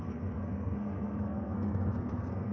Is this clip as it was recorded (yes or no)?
no